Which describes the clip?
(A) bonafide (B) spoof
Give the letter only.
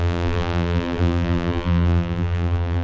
B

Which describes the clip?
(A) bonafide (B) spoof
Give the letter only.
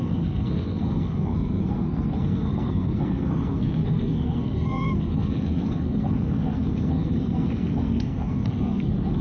B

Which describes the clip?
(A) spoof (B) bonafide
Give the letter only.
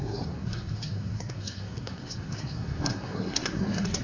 A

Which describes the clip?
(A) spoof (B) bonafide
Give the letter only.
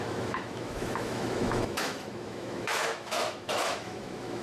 A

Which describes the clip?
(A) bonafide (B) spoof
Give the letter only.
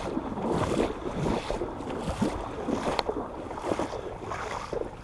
A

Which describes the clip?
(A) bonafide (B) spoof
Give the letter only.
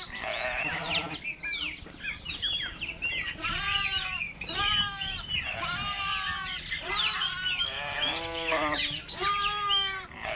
A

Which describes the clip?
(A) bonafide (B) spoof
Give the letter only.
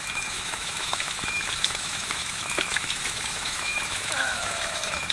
B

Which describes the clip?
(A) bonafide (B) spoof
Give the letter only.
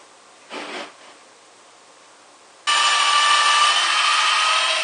A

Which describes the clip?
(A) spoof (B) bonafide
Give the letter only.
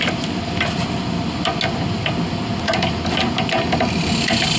B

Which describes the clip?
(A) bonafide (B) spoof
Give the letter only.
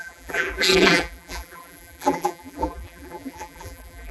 B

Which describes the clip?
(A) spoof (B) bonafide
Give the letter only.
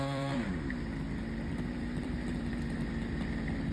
A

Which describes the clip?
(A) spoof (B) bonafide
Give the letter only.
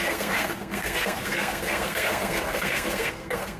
A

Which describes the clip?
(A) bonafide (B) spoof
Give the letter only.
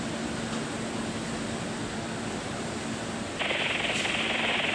A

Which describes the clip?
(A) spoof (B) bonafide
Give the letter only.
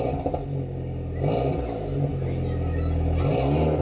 B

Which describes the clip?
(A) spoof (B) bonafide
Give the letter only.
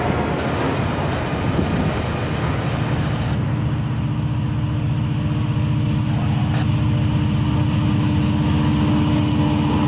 B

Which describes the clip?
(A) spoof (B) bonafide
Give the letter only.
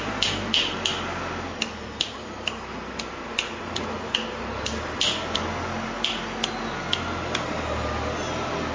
B